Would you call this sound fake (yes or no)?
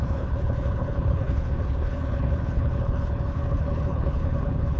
yes